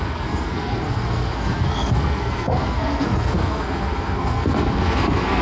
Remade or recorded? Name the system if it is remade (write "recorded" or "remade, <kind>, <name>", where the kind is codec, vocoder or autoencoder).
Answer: remade, codec, SNAC